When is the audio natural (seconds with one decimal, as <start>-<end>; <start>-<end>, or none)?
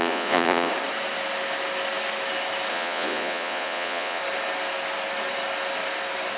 0.7-2.7; 4.2-6.4